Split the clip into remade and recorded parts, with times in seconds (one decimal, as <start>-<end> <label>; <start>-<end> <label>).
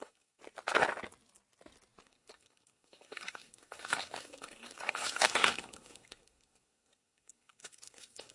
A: 0.0-0.4 remade; 0.4-2.0 recorded; 2.0-8.3 remade